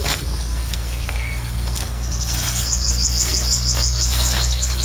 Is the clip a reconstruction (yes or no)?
yes